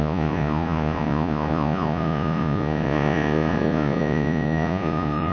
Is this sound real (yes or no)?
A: no